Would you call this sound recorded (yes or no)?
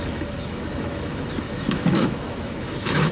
no